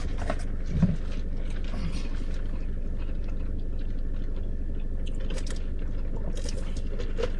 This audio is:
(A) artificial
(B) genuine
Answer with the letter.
B